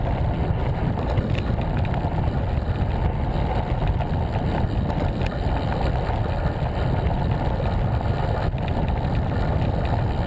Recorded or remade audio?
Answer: recorded